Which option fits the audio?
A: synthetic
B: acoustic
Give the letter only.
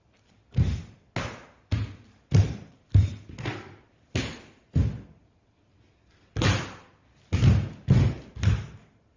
B